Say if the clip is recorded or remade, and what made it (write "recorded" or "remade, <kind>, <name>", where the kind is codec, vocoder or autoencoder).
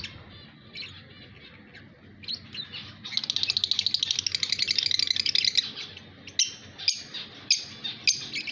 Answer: recorded